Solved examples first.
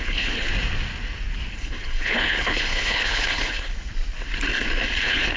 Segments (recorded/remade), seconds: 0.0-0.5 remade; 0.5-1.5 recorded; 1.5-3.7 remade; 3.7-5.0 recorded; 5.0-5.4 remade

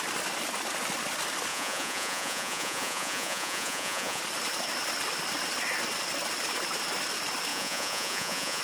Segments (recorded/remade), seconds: 0.0-1.5 recorded; 1.5-4.2 remade; 4.2-7.5 recorded; 7.5-8.6 remade

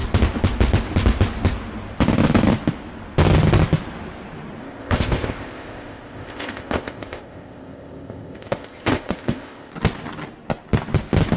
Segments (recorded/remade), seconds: 0.0-4.6 recorded; 4.6-9.7 remade; 9.7-11.4 recorded